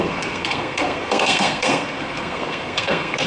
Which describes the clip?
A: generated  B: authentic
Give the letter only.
A